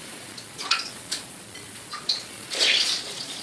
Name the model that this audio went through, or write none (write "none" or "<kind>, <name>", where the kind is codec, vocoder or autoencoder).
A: vocoder, Vocos